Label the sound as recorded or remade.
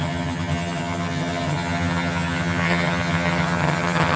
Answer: remade